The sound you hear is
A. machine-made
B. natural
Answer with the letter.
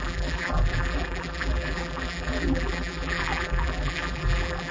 A